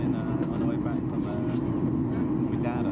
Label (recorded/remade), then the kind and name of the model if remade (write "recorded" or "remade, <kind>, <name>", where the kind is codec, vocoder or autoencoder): recorded